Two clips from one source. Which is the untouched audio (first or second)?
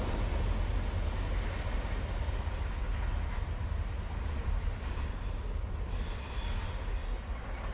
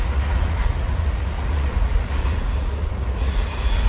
first